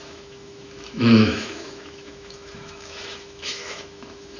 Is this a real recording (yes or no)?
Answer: no